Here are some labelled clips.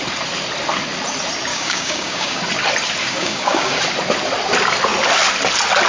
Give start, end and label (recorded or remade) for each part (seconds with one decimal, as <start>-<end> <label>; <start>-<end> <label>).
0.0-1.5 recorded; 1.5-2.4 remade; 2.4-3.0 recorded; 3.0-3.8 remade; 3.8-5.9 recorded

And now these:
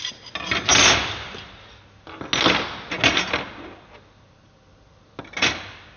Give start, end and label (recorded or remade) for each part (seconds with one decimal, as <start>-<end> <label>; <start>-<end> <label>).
0.0-6.0 recorded

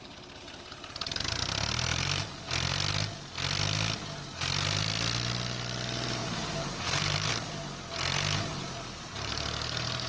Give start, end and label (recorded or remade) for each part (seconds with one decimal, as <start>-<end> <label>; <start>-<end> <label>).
0.0-1.9 recorded; 1.9-2.4 remade; 2.4-6.2 recorded; 6.2-7.3 remade; 7.3-8.5 recorded; 8.5-9.3 remade; 9.3-10.1 recorded